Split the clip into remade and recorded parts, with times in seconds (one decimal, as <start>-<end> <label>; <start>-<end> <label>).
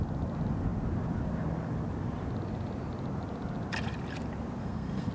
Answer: 0.0-4.6 recorded; 4.6-5.1 remade